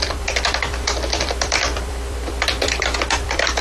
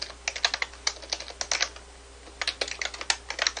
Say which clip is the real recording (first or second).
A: second